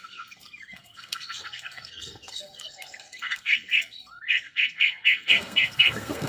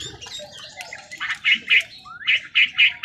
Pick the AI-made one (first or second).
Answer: first